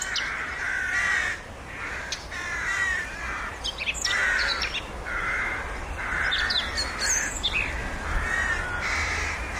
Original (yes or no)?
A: yes